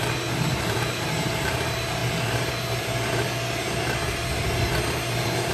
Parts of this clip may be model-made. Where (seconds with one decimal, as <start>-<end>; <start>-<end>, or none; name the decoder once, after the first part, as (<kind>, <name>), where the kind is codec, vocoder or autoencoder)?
0.0-2.0 (vocoder, BigVGAN v2)